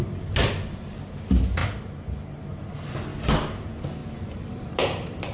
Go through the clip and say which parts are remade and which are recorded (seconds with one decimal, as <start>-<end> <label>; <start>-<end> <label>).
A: 0.0-5.3 recorded